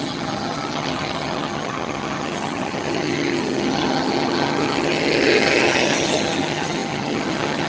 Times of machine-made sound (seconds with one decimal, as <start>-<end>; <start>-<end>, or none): 0.0-7.7